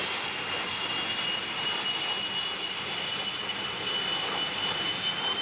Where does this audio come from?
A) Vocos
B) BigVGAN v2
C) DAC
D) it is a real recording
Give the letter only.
D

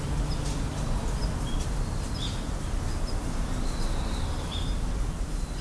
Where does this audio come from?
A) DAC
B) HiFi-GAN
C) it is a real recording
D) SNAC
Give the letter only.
C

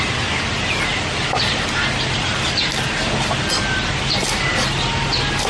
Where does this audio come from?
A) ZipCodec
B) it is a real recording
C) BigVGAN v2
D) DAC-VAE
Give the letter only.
B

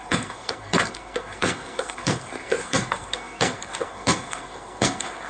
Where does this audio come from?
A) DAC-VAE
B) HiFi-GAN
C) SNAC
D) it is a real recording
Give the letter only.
C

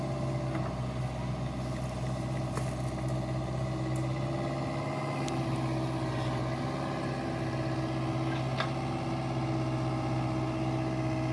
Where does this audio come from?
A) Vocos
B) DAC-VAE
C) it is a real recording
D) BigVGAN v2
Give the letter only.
C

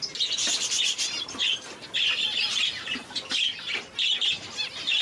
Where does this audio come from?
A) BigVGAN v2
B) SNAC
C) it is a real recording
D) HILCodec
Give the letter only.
A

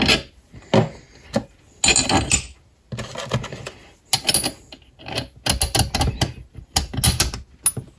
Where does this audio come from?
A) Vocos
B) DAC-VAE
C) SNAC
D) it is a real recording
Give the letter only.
D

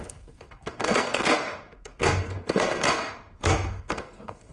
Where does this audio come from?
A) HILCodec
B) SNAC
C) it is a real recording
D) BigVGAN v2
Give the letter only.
B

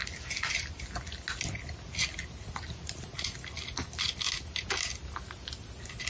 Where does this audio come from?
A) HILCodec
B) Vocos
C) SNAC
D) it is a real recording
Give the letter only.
D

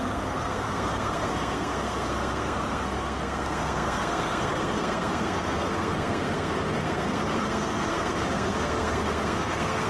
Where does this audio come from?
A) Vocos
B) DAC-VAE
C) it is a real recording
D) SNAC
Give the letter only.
D